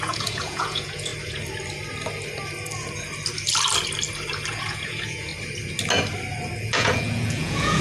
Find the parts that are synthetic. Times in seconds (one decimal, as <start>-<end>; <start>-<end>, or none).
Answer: 0.0-1.1; 4.5-5.3; 6.6-7.8